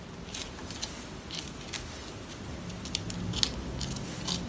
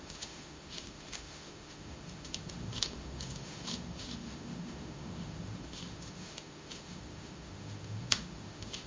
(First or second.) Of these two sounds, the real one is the first